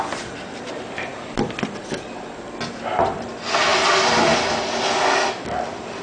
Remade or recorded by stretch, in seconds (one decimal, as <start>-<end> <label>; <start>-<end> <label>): 0.0-6.0 recorded